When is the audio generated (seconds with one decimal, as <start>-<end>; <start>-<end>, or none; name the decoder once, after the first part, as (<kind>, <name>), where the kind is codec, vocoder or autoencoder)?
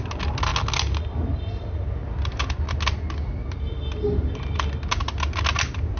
2.0-2.6 (vocoder, BigVGAN v2)